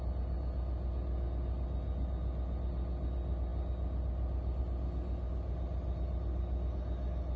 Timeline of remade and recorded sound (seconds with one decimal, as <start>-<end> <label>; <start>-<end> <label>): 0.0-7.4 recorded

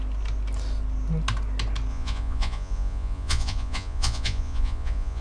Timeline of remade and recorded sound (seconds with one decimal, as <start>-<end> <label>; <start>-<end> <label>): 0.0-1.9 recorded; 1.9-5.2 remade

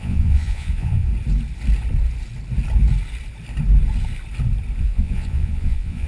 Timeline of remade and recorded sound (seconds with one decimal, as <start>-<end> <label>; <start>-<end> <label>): 0.0-1.1 remade; 1.1-4.8 recorded; 4.8-6.1 remade